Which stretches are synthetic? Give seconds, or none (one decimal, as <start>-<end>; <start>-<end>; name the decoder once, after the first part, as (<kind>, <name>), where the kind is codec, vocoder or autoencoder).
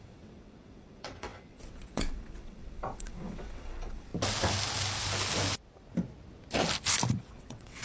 0.0-4.1 (vocoder, WaveNeXt); 7.3-7.8